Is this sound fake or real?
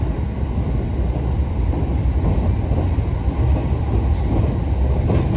real